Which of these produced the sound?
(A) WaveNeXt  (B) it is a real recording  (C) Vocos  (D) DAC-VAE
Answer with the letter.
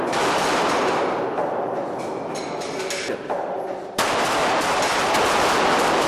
B